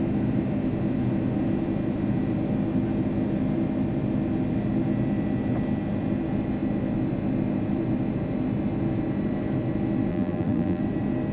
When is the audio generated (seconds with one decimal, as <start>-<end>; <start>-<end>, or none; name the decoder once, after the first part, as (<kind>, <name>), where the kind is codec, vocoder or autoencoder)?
10.1-10.8 (vocoder, BigVGAN v2)